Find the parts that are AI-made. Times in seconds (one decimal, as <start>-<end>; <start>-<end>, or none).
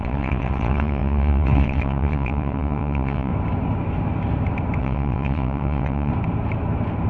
0.0-3.3; 4.8-6.1